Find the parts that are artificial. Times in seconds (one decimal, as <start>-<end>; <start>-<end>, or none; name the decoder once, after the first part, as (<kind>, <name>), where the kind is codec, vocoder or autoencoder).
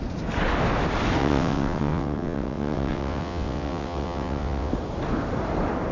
1.2-4.7 (vocoder, WaveNeXt)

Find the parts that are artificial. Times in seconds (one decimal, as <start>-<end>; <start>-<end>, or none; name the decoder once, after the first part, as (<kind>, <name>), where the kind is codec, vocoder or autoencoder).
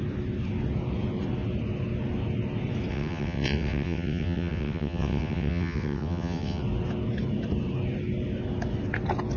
2.9-6.6 (vocoder, WaveNeXt)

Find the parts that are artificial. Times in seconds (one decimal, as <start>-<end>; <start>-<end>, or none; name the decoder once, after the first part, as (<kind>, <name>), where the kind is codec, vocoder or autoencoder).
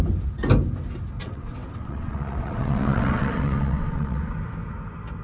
1.2-4.3 (vocoder, WaveNeXt)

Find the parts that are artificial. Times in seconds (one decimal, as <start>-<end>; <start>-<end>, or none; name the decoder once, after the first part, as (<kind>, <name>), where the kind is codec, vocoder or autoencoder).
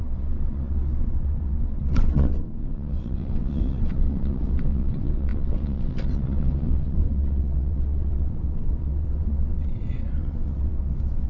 0.0-11.3 (vocoder, WaveNeXt)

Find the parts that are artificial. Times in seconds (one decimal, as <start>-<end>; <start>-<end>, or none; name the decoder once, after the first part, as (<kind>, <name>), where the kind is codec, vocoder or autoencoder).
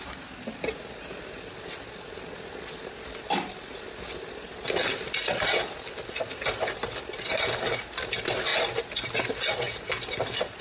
none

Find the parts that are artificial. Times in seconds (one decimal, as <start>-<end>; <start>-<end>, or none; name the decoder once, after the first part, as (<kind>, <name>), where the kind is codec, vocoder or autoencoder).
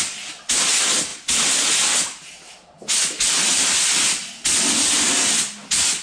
none